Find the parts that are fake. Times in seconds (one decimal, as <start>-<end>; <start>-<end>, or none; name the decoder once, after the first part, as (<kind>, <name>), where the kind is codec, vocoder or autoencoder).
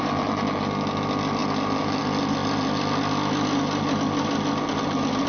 none